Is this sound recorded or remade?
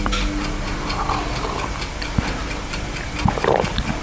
recorded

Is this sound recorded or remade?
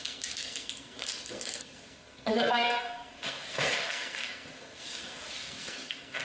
remade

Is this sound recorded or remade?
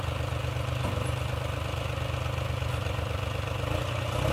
recorded